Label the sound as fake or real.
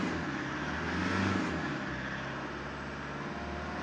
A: real